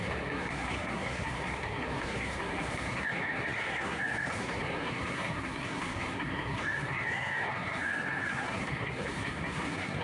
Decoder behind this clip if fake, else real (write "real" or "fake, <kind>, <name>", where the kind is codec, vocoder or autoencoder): fake, codec, SNAC